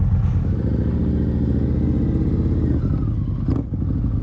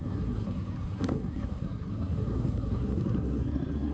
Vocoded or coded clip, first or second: second